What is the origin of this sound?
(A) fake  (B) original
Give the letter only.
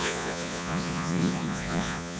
A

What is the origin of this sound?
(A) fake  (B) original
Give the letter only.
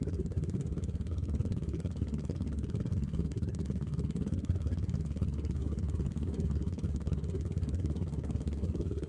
A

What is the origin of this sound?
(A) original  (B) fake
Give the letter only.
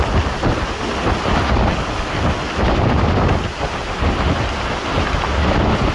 A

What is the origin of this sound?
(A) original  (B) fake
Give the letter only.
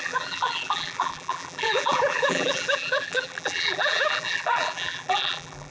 B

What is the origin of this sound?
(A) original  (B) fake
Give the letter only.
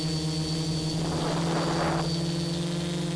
A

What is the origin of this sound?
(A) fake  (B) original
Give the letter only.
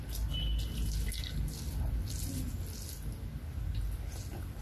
B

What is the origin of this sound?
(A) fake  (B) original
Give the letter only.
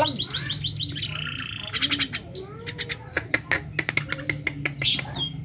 B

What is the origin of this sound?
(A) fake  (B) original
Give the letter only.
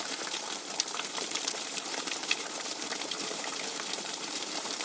A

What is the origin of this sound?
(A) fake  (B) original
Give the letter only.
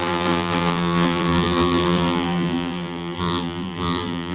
A